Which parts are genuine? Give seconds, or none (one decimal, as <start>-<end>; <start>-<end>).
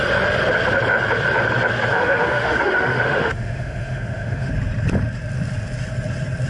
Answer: 0.0-1.9; 4.5-6.5